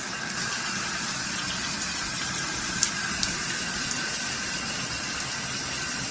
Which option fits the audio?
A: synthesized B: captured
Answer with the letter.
B